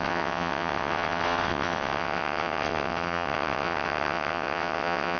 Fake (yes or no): yes